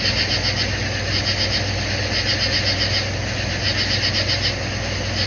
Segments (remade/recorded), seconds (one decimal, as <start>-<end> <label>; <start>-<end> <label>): 0.0-5.3 recorded

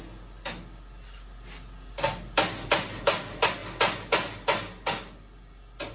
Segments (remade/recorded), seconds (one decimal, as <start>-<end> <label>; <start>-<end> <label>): 0.0-5.9 recorded

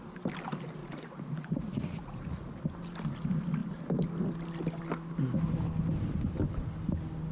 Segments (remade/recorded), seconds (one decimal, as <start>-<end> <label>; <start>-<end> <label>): 0.0-0.8 recorded; 0.8-2.6 remade; 2.6-7.3 recorded

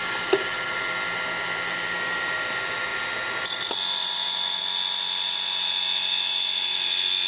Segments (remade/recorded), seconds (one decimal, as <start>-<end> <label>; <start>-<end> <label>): 0.0-7.3 recorded

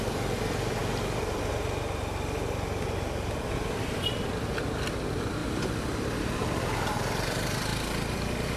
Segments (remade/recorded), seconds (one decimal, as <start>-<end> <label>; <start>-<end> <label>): 0.0-8.6 recorded

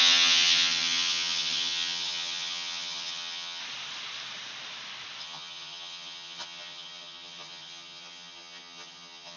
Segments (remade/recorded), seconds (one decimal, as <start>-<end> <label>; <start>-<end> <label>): 0.0-3.6 remade; 3.6-5.2 recorded; 5.2-9.4 remade